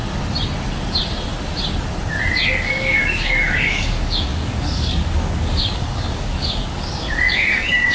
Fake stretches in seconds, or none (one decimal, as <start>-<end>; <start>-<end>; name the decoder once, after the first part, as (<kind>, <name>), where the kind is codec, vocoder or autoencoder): 2.5-7.9 (codec, DAC)